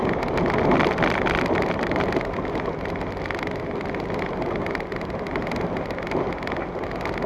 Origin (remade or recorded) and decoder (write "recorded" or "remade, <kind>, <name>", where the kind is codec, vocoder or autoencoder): recorded